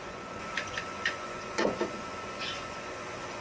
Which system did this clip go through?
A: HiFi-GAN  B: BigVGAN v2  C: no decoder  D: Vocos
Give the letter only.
D